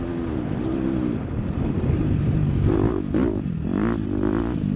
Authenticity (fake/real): real